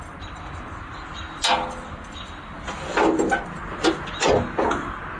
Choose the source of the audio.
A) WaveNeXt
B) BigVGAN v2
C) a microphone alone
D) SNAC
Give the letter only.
C